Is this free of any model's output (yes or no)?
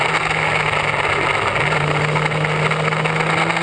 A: yes